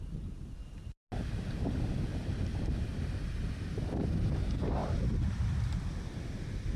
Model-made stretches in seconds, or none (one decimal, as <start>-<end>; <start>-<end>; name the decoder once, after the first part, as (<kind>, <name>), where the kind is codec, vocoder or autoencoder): 2.1-4.3 (vocoder, BigVGAN v2); 4.8-5.6